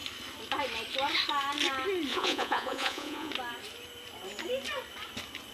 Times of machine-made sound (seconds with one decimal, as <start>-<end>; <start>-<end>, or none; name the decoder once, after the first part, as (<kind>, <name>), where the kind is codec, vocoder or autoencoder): 2.1-3.3 (vocoder, Vocos)